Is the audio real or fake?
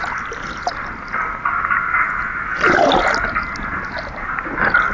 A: real